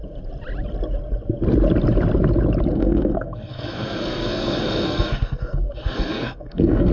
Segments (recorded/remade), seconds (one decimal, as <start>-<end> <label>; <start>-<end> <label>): 0.0-2.7 recorded; 2.7-6.9 remade